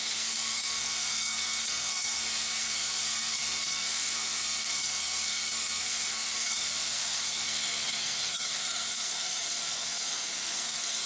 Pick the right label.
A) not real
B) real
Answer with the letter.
A